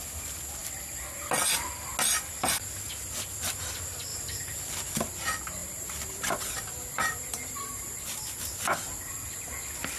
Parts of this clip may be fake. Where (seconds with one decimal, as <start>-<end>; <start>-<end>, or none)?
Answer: 5.6-8.4